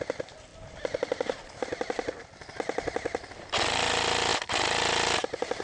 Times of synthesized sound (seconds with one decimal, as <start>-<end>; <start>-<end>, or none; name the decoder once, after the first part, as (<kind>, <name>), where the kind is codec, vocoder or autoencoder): none